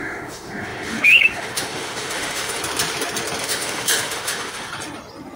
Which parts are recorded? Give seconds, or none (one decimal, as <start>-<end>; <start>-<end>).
2.6-3.4; 4.7-5.4